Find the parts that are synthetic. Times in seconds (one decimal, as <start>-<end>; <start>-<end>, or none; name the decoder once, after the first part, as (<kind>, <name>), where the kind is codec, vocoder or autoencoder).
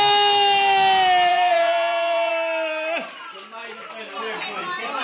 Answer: 1.3-2.3 (vocoder, Vocos)